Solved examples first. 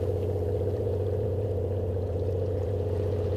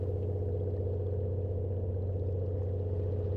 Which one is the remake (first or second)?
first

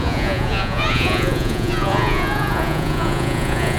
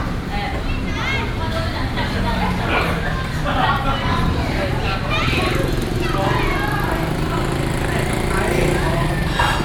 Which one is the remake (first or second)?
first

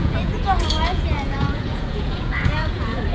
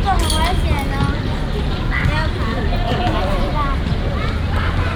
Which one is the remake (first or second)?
first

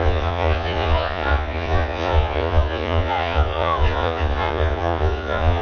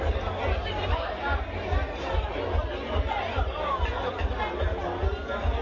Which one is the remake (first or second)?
first